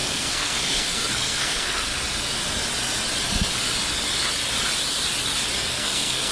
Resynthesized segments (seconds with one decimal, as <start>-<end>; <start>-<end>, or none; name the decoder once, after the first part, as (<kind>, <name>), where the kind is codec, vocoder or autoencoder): 0.0-1.9 (codec, SNAC); 5.7-6.3